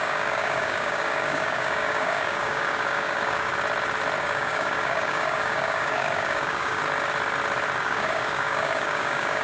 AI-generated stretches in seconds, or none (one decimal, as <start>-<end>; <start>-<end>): 0.0-3.5; 4.2-6.8; 7.8-9.4